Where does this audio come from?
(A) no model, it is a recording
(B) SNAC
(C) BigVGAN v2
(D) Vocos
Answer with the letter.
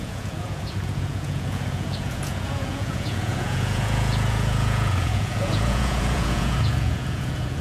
D